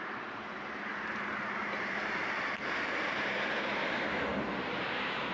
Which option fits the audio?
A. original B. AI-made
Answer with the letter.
B